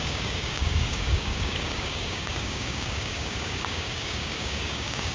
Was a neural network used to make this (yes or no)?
yes